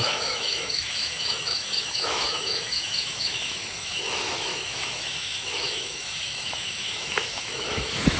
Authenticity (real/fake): fake